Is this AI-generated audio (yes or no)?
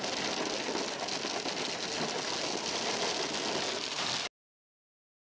no